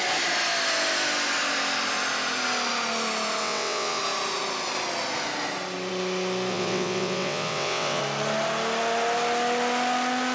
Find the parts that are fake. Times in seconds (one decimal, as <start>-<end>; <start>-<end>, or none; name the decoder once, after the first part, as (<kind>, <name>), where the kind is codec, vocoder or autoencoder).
3.4-4.0 (vocoder, WaveNeXt); 6.5-8.0